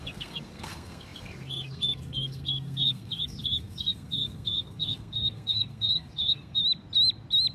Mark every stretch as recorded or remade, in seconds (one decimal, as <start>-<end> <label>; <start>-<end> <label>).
0.0-6.6 remade; 6.6-7.5 recorded